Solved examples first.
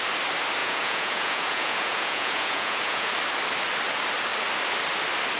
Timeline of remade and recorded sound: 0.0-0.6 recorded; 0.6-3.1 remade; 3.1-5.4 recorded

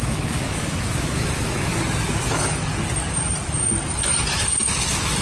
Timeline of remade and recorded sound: 0.0-1.7 remade; 1.7-2.3 recorded; 2.3-2.7 remade; 2.7-4.3 recorded; 4.3-5.2 remade

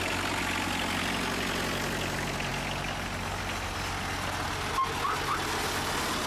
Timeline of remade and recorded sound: 0.0-6.3 recorded

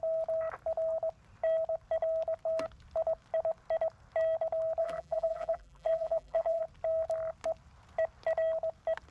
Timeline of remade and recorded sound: 0.0-4.8 recorded; 4.8-6.6 remade; 6.6-9.1 recorded

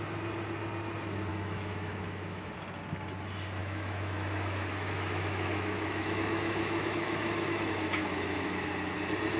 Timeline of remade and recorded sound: 0.0-1.3 recorded; 1.3-2.5 remade; 2.5-3.6 recorded; 3.6-8.5 remade; 8.5-9.4 recorded